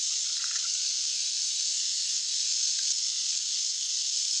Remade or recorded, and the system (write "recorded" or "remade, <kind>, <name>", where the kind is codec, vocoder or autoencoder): remade, codec, SNAC